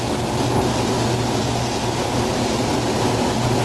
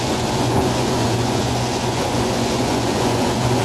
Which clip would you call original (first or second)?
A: first